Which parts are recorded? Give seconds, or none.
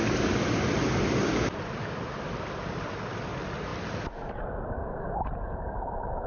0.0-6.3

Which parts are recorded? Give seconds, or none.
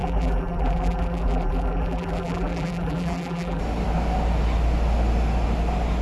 3.6-6.0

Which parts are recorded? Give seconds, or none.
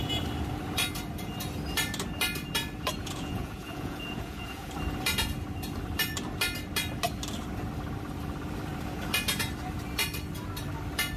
0.0-3.0; 4.7-11.2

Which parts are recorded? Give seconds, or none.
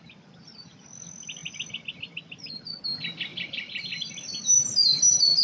0.0-3.3; 3.9-5.4